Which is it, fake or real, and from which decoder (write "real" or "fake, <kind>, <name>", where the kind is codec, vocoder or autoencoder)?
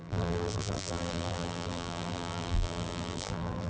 fake, vocoder, BigVGAN v2